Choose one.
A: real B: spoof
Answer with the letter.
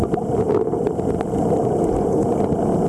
A